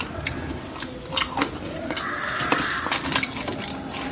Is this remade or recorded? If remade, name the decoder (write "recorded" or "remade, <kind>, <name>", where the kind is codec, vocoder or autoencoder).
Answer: recorded